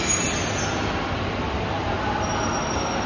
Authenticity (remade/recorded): recorded